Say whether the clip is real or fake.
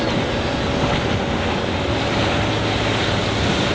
real